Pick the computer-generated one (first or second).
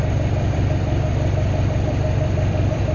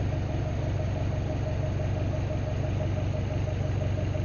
first